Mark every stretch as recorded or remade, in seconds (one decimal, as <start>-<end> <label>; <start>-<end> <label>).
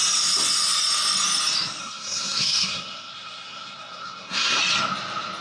0.0-1.8 recorded; 1.8-4.6 remade; 4.6-5.4 recorded